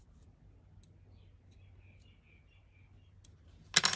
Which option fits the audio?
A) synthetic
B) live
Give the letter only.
B